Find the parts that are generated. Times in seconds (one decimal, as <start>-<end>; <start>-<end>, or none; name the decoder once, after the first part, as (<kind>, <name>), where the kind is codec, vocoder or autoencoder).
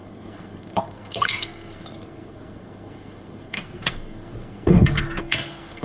0.0-5.8 (codec, SNAC)